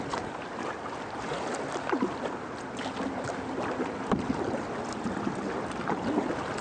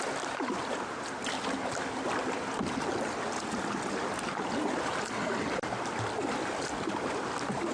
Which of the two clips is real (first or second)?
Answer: first